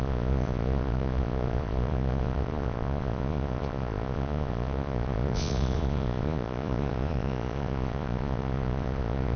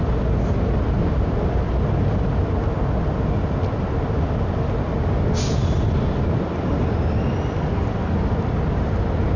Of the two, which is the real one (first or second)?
second